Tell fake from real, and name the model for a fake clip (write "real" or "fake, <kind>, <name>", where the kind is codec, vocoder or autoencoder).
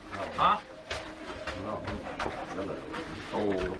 fake, vocoder, BigVGAN v2